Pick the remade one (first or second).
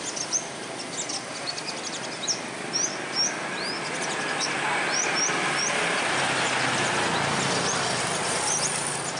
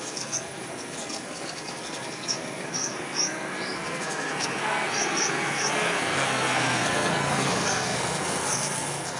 second